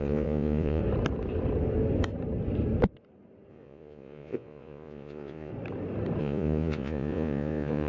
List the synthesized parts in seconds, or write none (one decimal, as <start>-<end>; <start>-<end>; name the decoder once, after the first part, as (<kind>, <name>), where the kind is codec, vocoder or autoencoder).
0.0-0.8 (vocoder, Vocos); 3.5-5.5; 6.2-7.9